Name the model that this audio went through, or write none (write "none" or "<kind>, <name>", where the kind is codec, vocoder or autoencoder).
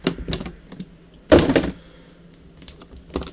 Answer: none